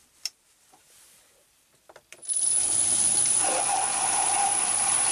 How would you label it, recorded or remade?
remade